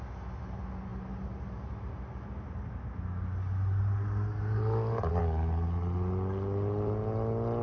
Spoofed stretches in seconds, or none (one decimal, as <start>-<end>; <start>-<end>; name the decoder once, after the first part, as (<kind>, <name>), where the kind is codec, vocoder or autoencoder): none